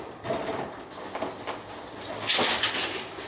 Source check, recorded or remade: recorded